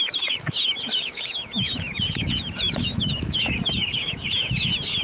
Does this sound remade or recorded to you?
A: remade